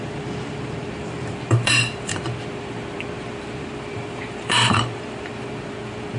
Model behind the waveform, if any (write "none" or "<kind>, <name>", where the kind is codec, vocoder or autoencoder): vocoder, BigVGAN v2